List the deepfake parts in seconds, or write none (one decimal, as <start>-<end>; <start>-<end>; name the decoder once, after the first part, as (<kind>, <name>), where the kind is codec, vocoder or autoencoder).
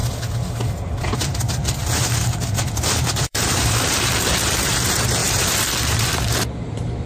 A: 1.2-7.1 (vocoder, BigVGAN v2)